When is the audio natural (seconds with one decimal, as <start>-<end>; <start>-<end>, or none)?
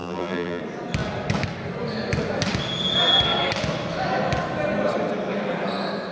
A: 0.6-6.1